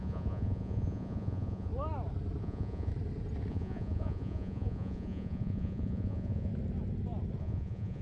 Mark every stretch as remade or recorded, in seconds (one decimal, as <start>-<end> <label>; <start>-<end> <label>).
0.0-1.7 remade; 1.7-2.4 recorded; 2.4-2.9 remade; 2.9-3.5 recorded; 3.5-6.5 remade; 6.5-7.4 recorded; 7.4-8.0 remade